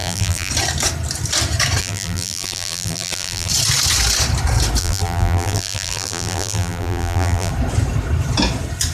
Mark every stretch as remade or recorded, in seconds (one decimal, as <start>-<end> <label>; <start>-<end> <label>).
0.0-0.5 remade; 0.5-1.8 recorded; 1.8-3.5 remade; 3.5-4.8 recorded; 4.8-7.5 remade; 7.5-8.9 recorded